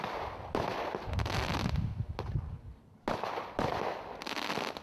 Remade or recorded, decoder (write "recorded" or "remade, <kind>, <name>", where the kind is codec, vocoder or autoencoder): recorded